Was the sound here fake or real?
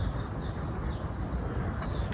real